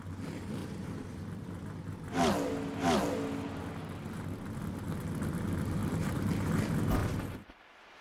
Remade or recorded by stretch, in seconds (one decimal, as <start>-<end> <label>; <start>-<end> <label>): 0.0-0.6 recorded; 0.6-1.2 remade; 1.2-5.8 recorded; 5.8-6.6 remade; 6.6-7.0 recorded; 7.0-7.6 remade; 7.6-8.0 recorded